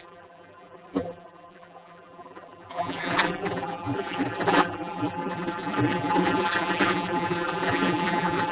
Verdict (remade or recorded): remade